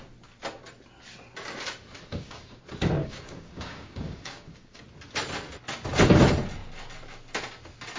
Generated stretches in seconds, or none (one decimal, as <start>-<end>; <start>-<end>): 2.1-2.6; 3.0-4.8

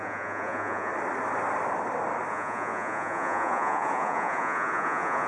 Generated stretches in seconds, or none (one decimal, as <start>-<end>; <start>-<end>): 0.0-0.9; 2.3-5.3

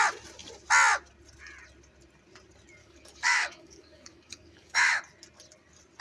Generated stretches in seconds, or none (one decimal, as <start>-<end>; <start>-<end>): 2.8-4.8

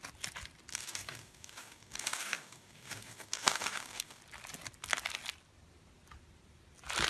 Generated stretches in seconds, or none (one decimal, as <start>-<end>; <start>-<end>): 0.7-4.2

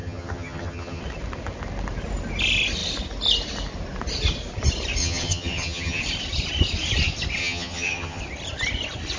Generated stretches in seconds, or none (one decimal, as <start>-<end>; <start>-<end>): 0.0-1.0; 5.0-6.0; 7.4-8.2

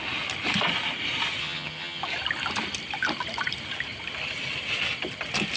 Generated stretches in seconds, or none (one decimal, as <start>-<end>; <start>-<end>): 1.4-2.0

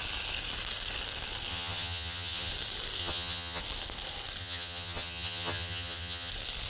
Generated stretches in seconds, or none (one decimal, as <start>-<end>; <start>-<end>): 1.5-2.5; 3.0-3.6; 4.4-6.3